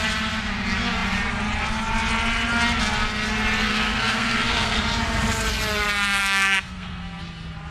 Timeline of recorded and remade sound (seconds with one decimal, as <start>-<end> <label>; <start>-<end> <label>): 0.0-3.7 recorded; 3.7-4.8 remade; 4.8-6.2 recorded; 6.2-7.2 remade; 7.2-7.7 recorded